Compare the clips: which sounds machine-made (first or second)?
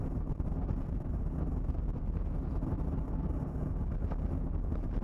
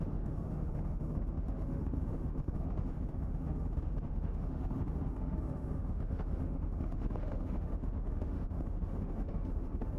second